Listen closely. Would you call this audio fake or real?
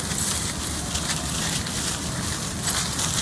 real